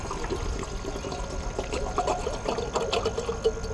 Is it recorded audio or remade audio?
recorded